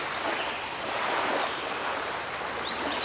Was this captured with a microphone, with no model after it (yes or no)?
yes